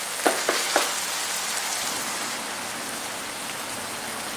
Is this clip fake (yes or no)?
no